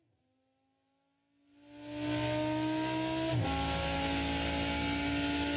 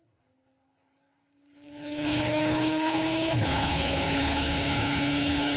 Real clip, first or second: first